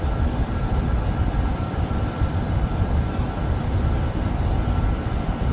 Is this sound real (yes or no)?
yes